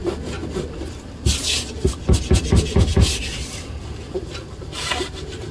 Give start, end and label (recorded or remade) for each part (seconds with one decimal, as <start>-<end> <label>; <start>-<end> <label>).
0.0-5.5 recorded